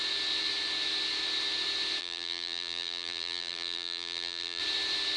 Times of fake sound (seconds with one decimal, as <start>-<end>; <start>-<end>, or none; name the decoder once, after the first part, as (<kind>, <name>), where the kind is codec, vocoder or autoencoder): 2.0-4.6 (vocoder, BigVGAN v2)